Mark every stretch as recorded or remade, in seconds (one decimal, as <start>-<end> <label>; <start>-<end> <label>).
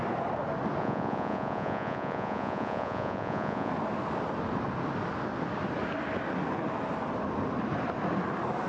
0.0-0.8 recorded; 0.8-3.7 remade; 3.7-8.7 recorded